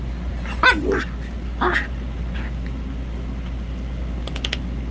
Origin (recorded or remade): recorded